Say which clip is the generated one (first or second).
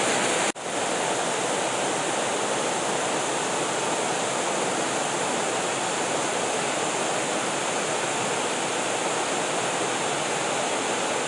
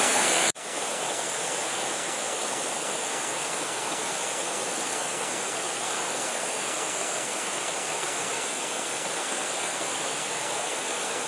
second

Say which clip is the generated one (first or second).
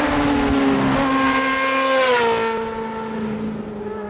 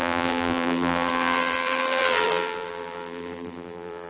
second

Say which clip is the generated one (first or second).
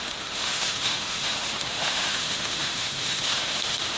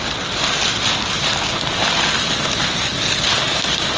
first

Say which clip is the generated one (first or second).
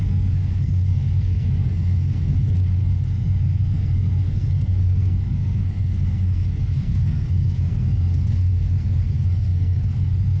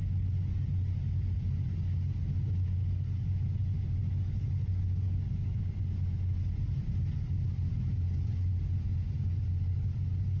first